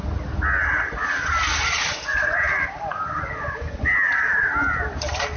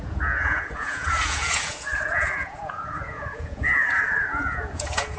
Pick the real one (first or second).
first